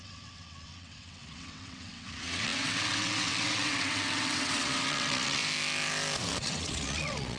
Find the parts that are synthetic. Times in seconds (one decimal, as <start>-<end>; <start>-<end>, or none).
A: 0.0-5.4; 6.4-7.4